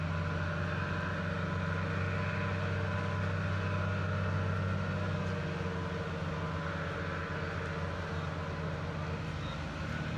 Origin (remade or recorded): recorded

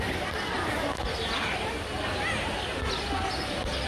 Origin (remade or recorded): recorded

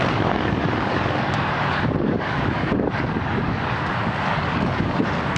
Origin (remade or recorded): remade